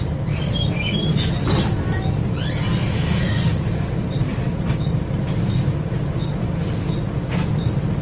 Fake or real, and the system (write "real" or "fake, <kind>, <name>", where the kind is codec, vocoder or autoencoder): real